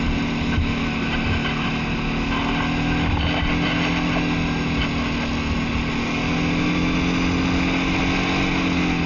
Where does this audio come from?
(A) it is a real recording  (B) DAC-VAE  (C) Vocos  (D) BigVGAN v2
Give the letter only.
A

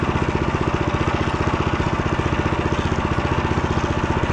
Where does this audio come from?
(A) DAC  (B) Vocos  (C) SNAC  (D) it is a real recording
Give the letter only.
D